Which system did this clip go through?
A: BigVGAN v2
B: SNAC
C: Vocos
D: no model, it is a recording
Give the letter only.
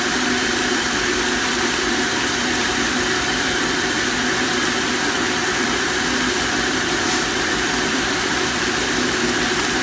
A